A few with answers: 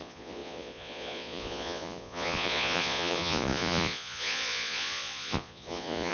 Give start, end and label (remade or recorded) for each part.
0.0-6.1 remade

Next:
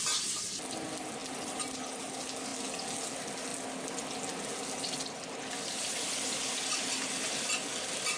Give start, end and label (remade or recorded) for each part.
0.0-8.2 recorded

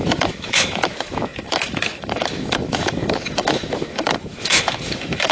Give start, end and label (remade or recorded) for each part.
0.0-5.3 remade

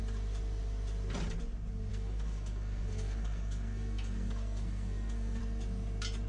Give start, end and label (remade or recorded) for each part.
0.0-1.9 recorded; 1.9-5.4 remade; 5.4-6.3 recorded

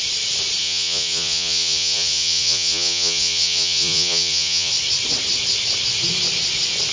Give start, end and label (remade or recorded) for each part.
0.0-0.6 recorded; 0.6-4.7 remade; 4.7-6.9 recorded